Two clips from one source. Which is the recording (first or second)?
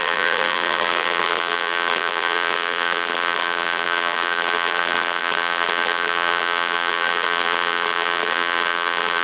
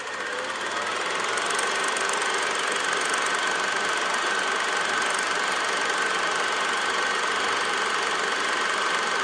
second